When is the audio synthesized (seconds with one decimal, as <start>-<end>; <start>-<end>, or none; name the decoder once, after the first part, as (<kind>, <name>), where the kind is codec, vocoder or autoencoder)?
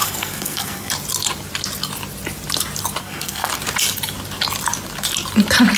0.0-0.9 (codec, SNAC); 3.0-3.5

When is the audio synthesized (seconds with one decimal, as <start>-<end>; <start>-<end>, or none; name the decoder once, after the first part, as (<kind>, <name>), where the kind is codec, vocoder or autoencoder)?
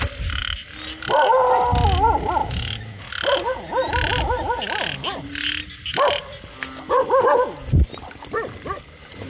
2.4-3.0 (autoencoder, DAC-VAE)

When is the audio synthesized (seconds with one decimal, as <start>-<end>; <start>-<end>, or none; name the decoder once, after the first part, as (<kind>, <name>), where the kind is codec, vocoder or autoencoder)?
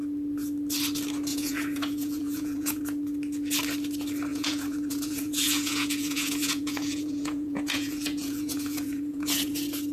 1.3-2.8 (vocoder, Vocos); 4.3-9.5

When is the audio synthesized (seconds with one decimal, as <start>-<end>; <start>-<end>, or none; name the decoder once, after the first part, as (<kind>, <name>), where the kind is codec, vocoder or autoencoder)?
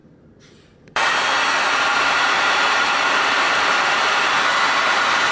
0.0-1.1 (vocoder, BigVGAN v2); 1.9-3.8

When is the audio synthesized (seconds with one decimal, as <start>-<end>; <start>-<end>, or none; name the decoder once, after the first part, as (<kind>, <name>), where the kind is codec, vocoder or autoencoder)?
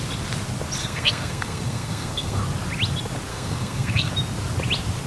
0.8-2.4 (codec, SNAC); 3.3-4.1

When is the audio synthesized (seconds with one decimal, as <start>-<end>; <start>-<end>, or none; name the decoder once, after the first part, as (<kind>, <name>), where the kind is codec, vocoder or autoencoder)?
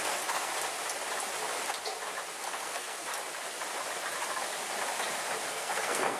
0.0-0.5 (codec, SNAC); 2.4-3.1; 5.5-6.2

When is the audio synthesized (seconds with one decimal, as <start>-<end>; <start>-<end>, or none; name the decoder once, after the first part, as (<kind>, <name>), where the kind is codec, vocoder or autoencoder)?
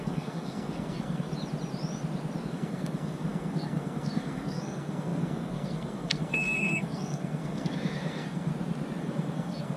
0.0-1.3 (codec, SNAC); 2.5-8.5; 9.0-9.8